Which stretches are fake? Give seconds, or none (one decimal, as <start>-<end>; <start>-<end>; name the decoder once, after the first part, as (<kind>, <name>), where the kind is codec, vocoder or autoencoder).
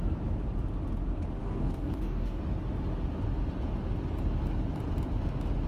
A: 1.4-2.4 (codec, DAC)